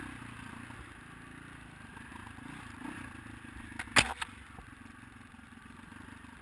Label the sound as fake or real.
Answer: real